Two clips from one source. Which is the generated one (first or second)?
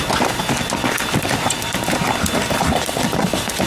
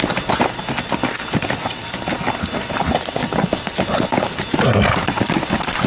first